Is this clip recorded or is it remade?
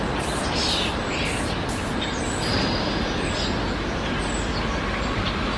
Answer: recorded